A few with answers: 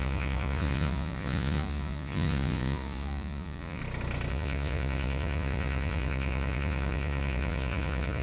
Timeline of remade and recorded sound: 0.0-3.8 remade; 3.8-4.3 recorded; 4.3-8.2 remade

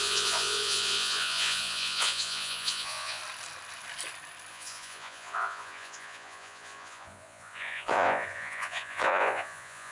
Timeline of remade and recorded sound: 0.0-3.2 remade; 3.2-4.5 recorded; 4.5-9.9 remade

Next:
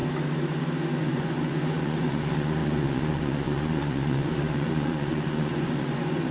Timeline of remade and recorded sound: 0.0-1.0 recorded; 1.0-6.3 remade

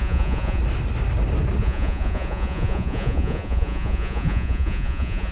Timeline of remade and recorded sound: 0.0-0.6 remade; 0.6-1.6 recorded; 1.6-5.3 remade

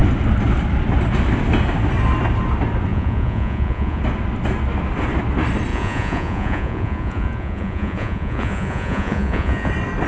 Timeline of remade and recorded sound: 0.0-2.9 recorded; 2.9-4.0 remade; 4.0-5.7 recorded; 5.7-9.7 remade; 9.7-10.1 recorded

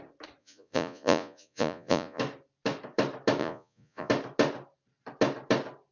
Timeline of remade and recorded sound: 0.0-0.4 recorded; 0.4-2.2 remade; 2.2-3.4 recorded; 3.4-4.1 remade; 4.1-5.9 recorded

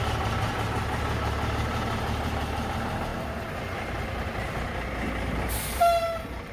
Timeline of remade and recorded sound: 0.0-6.5 recorded

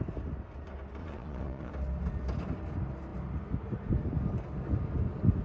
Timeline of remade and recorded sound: 0.0-1.0 recorded; 1.0-1.7 remade; 1.7-5.4 recorded